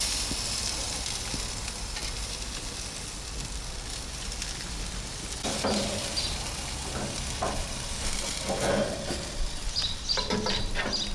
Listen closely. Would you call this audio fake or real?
real